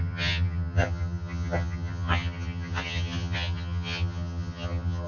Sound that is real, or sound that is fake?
fake